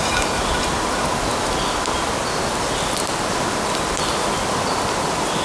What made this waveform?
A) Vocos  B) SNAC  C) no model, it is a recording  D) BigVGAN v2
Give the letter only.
C